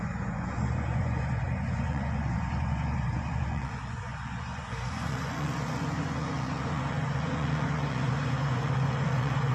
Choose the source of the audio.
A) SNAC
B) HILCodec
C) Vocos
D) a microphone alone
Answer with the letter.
C